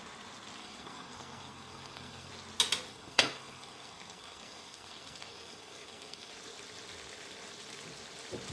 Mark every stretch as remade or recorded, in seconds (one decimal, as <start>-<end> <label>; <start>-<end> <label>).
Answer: 0.0-0.6 recorded; 0.6-2.3 remade; 2.3-2.9 recorded; 2.9-6.3 remade; 6.3-8.5 recorded

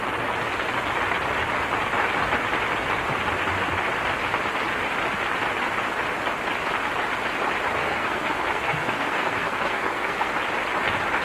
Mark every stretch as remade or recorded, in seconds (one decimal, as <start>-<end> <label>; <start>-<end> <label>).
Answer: 0.0-7.8 recorded; 7.8-10.3 remade; 10.3-11.2 recorded

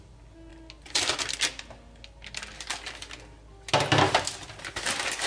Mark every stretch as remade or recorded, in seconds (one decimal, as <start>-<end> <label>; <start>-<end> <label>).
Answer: 0.0-5.3 recorded

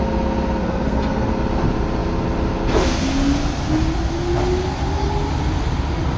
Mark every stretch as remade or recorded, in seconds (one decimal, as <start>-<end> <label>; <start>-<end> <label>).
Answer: 0.0-0.6 recorded; 0.6-1.3 remade; 1.3-6.2 recorded

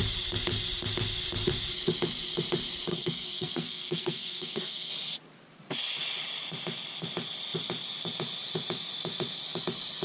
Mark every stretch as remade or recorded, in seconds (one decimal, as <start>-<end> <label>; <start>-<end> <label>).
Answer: 0.0-2.9 recorded; 2.9-4.9 remade; 4.9-10.0 recorded

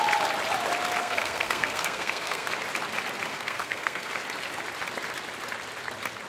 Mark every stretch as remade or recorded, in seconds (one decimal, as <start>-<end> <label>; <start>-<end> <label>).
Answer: 0.0-1.0 recorded; 1.0-2.5 remade; 2.5-3.3 recorded; 3.3-4.1 remade; 4.1-6.3 recorded

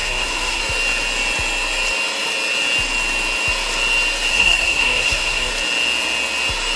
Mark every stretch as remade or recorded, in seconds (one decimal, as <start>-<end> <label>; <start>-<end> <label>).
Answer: 0.0-0.6 remade; 0.6-4.3 recorded; 4.3-5.5 remade; 5.5-6.8 recorded